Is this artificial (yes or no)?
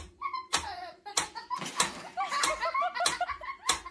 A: no